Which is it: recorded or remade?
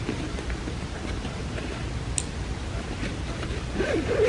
recorded